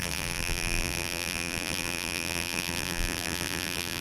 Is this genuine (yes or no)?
no